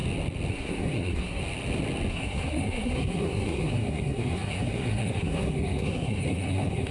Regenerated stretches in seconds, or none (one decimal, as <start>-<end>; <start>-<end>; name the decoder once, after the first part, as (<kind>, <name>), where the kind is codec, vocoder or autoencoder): 0.5-1.4 (codec, SNAC); 2.1-6.9